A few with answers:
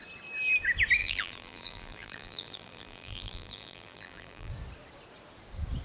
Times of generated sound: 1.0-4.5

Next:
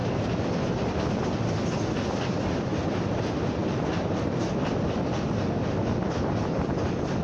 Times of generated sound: 3.6-4.7

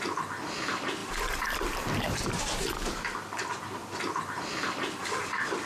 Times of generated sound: 1.0-4.4